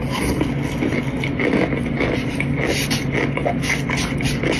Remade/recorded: recorded